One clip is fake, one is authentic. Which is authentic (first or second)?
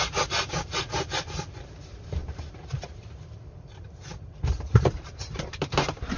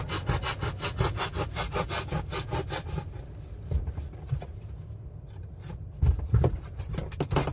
second